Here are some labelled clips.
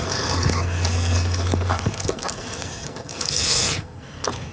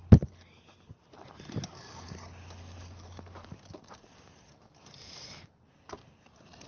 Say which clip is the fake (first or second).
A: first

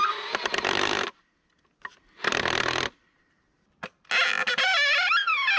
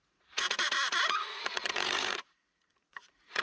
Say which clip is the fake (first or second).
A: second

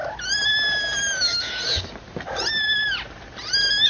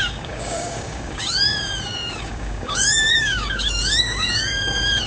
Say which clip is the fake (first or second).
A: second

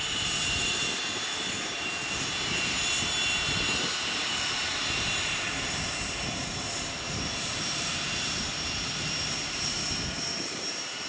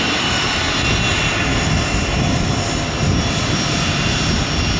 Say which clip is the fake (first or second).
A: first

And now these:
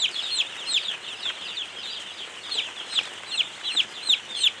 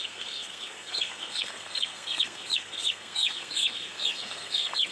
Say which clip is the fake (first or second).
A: second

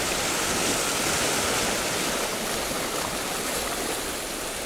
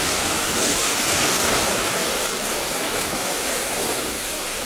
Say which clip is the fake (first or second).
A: second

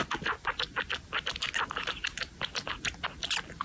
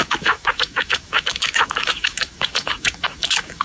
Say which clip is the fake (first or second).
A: second